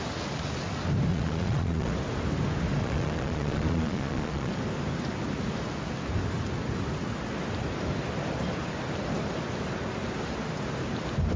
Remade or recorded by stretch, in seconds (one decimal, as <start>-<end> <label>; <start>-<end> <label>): 0.0-1.1 recorded; 1.1-1.9 remade; 1.9-2.8 recorded; 2.8-4.5 remade; 4.5-11.4 recorded